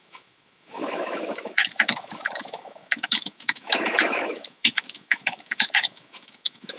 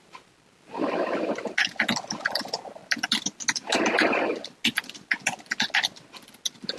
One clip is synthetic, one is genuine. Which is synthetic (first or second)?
first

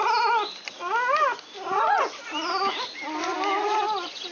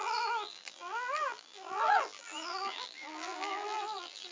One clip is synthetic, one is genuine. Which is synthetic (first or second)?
second